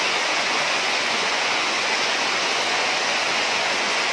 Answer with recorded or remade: remade